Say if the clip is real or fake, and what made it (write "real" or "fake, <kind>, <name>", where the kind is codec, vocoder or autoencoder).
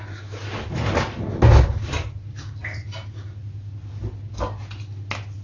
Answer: real